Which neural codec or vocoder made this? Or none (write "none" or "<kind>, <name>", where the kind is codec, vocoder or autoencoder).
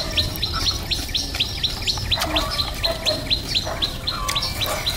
none